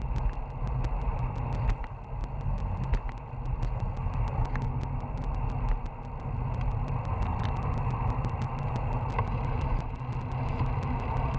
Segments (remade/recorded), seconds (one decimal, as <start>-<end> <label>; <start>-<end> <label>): 0.0-11.4 recorded